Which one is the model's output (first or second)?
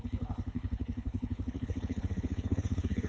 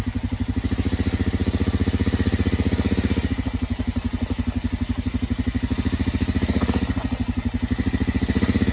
first